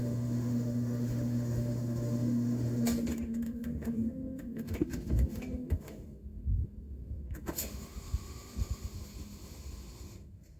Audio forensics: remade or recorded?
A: remade